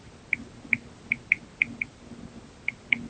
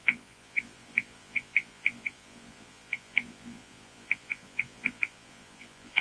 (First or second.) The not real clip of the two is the second